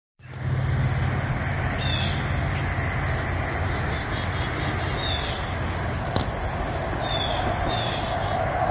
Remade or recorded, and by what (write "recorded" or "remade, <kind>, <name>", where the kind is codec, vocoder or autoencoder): recorded